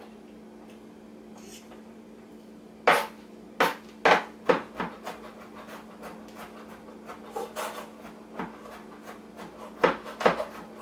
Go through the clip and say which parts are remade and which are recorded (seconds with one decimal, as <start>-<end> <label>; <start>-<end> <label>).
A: 0.0-1.5 recorded; 1.5-2.3 remade; 2.3-10.8 recorded